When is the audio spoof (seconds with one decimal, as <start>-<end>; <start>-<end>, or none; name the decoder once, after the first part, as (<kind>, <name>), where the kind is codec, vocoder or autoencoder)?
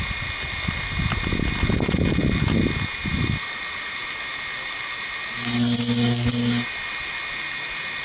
none